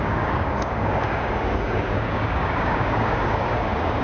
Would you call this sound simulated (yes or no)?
yes